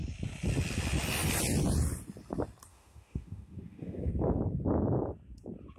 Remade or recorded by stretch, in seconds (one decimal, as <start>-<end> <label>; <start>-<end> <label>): 0.0-2.7 recorded; 2.7-4.1 remade; 4.1-5.8 recorded